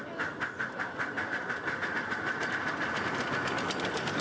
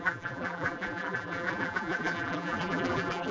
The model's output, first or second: second